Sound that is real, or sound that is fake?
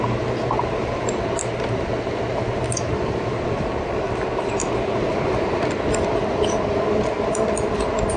real